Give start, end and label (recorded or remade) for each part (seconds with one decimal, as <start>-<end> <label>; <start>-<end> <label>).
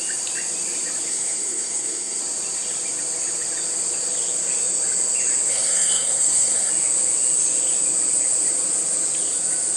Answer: 0.0-1.1 recorded; 1.1-2.2 remade; 2.2-5.5 recorded; 5.5-6.7 remade; 6.7-9.8 recorded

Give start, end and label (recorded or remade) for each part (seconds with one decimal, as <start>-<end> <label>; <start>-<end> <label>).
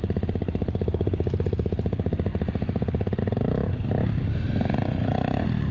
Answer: 0.0-5.7 recorded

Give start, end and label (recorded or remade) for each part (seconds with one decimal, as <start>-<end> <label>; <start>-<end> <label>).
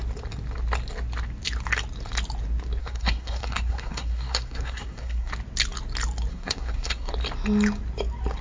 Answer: 0.0-2.8 recorded; 2.8-5.3 remade; 5.3-6.3 recorded; 6.3-7.1 remade; 7.1-8.4 recorded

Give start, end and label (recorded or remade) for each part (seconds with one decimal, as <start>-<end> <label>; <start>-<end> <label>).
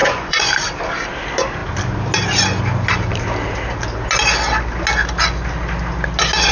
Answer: 0.0-0.5 remade; 0.5-6.5 recorded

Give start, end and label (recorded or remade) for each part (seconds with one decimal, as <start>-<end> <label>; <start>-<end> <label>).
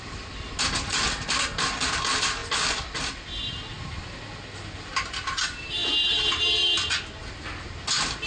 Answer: 0.0-2.4 recorded; 2.4-4.2 remade; 4.2-8.3 recorded